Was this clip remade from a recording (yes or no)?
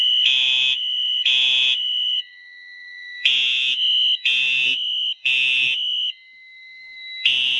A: yes